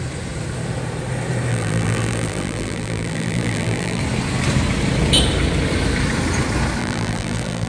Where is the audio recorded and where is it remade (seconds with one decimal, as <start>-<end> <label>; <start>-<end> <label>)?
0.0-1.5 recorded; 1.5-4.0 remade; 4.0-6.8 recorded; 6.8-7.7 remade